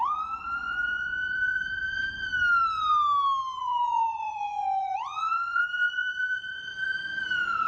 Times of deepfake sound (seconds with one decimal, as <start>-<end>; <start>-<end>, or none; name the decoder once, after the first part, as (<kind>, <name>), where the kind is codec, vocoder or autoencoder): 0.0-2.3 (vocoder, Vocos); 3.6-7.7